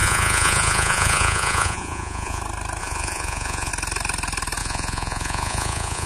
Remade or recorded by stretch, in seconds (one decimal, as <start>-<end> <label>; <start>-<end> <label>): 0.0-2.4 remade; 2.4-2.8 recorded; 2.8-3.7 remade; 3.7-4.6 recorded; 4.6-6.1 remade